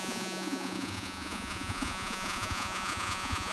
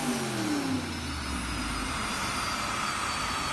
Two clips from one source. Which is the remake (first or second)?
first